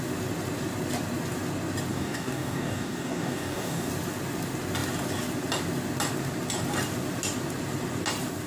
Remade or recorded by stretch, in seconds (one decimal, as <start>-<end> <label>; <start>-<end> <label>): 0.0-1.9 recorded; 1.9-3.9 remade; 3.9-8.5 recorded